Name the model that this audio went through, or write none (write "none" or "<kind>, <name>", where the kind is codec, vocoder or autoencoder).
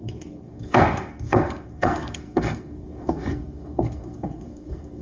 codec, SNAC